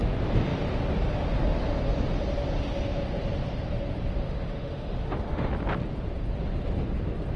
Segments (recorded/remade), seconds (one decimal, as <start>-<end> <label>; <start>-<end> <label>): 0.0-4.2 recorded; 4.2-5.5 remade; 5.5-7.4 recorded